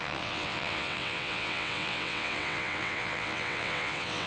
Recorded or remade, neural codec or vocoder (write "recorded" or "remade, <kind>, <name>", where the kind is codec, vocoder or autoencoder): remade, vocoder, WaveNeXt